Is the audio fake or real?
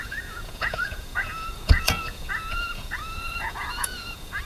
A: fake